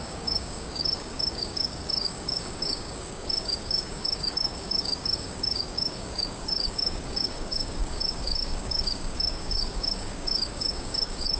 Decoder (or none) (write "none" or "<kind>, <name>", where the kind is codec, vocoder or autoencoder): codec, DAC